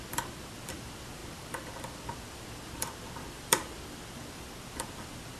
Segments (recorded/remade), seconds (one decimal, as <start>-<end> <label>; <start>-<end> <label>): 0.0-5.4 remade